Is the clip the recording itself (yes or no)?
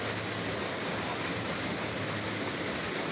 yes